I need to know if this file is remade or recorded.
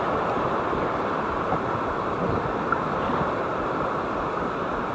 recorded